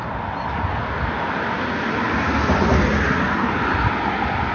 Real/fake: real